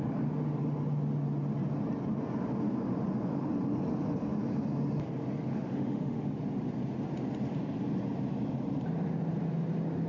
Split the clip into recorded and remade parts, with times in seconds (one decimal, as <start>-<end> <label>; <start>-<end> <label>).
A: 0.0-5.5 recorded; 5.5-6.4 remade; 6.4-10.1 recorded